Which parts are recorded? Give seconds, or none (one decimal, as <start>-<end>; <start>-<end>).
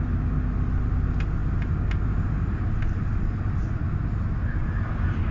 0.0-5.3